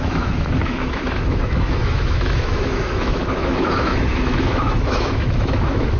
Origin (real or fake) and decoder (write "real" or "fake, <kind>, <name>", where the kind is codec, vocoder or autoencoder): fake, autoencoder, DAC-VAE